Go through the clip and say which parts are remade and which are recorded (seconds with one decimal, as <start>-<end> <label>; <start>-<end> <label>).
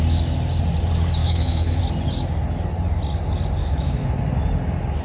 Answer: 0.0-1.2 recorded; 1.2-1.8 remade; 1.8-3.6 recorded; 3.6-4.1 remade; 4.1-5.0 recorded